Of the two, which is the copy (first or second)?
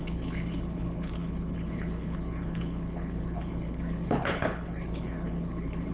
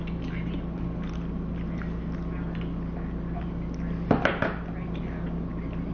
first